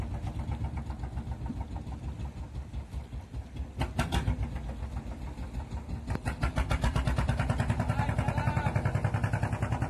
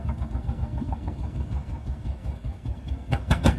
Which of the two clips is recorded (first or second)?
first